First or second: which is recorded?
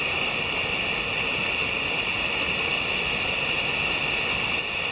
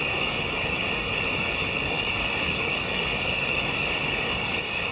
first